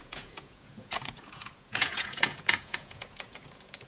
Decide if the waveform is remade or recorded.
remade